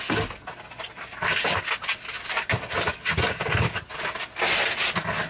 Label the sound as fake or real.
real